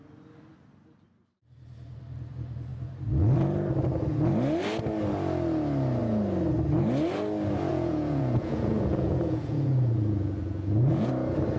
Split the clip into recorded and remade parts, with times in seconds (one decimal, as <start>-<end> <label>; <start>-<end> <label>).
0.0-7.7 recorded; 7.7-11.1 remade; 11.1-11.6 recorded